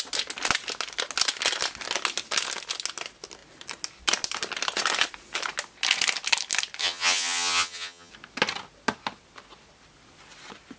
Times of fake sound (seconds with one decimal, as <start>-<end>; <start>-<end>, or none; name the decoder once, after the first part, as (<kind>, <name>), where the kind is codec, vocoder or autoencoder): 6.8-8.1 (vocoder, HiFi-GAN)